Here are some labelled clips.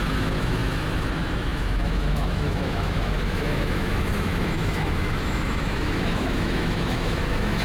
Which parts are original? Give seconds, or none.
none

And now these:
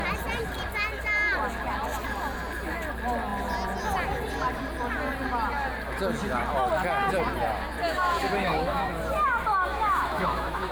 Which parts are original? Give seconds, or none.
0.0-7.8; 8.9-9.7

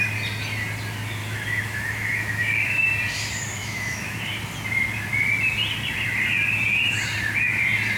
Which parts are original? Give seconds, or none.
0.0-1.2; 2.8-3.6; 4.2-8.0

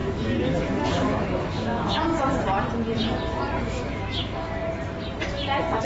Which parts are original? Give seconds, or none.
2.1-3.6; 4.6-5.8